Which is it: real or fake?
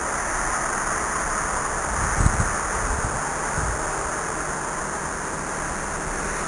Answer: real